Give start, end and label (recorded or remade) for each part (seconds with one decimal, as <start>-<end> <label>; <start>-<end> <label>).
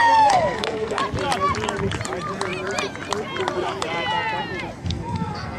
0.0-1.0 remade; 1.0-4.8 recorded; 4.8-5.6 remade